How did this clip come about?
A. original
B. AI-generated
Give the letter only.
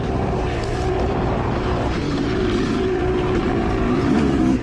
B